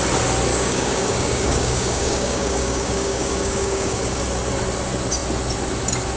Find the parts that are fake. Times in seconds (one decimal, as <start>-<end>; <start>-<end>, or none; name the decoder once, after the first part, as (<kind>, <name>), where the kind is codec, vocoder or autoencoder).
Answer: 0.5-4.2 (codec, DAC)